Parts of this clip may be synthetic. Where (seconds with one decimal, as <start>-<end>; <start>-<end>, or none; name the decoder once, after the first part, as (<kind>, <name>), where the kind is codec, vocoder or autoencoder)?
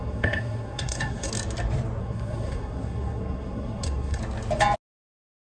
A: 0.0-1.3 (codec, SNAC); 2.0-4.2